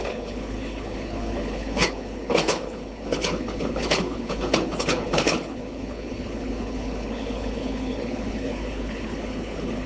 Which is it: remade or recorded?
remade